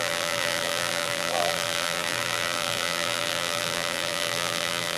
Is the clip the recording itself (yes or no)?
no